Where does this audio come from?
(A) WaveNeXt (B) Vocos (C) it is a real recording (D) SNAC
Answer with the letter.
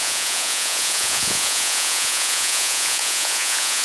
B